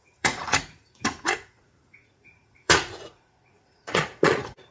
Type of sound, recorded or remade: remade